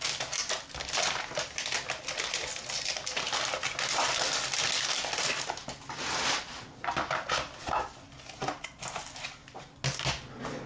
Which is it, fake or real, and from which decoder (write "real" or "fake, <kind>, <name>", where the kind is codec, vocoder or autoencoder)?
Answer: real